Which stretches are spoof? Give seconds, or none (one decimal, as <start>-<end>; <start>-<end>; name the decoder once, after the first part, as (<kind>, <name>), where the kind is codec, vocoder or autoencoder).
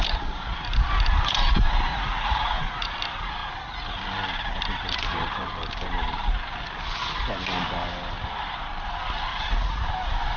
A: 1.9-2.9 (vocoder, Vocos); 9.3-9.8